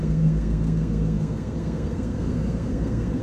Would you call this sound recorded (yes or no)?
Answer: no